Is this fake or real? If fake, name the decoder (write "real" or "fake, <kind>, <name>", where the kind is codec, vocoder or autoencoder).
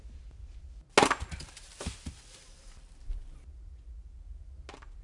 real